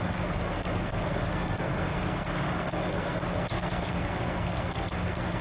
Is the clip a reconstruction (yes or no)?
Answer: yes